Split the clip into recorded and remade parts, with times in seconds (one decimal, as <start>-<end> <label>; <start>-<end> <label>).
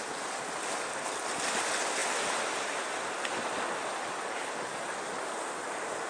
0.0-6.1 recorded